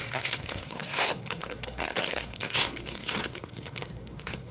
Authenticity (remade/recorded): remade